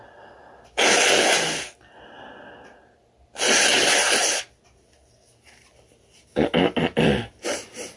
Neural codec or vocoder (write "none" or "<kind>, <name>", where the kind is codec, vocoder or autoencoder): none